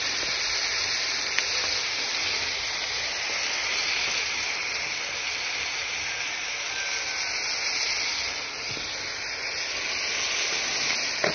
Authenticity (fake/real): real